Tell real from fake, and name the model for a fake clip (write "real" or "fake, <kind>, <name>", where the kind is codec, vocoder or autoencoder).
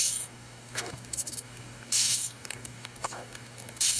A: fake, codec, DAC